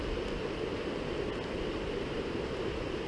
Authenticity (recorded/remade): recorded